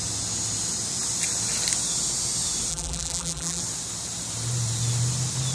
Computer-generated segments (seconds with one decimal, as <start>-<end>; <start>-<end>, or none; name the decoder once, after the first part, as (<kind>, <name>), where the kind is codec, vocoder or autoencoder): 2.7-3.6 (vocoder, BigVGAN v2)